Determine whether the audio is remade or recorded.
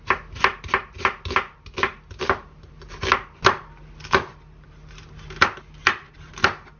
recorded